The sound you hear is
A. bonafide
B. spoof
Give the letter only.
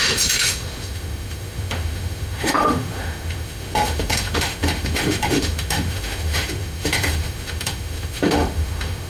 B